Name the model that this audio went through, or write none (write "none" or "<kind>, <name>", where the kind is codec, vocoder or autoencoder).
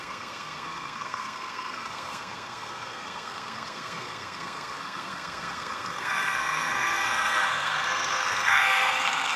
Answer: codec, SNAC